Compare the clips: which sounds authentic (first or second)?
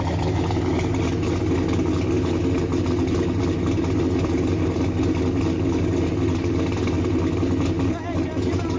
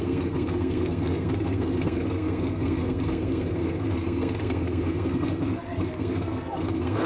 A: first